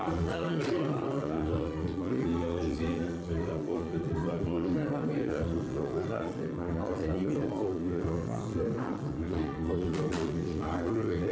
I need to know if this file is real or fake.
fake